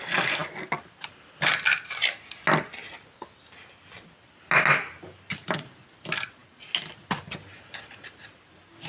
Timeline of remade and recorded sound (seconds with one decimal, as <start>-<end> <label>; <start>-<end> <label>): 0.0-8.9 recorded